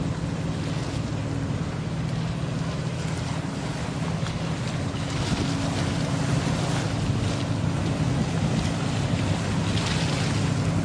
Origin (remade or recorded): recorded